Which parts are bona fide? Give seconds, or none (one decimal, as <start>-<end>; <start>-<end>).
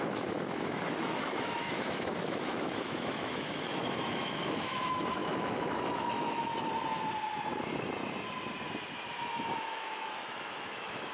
6.5-9.6